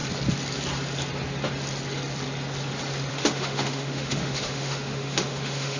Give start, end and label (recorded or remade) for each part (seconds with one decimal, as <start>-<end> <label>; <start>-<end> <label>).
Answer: 0.0-3.1 recorded; 3.1-5.8 remade